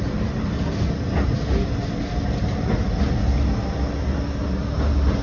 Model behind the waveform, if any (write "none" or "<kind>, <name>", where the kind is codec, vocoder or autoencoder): none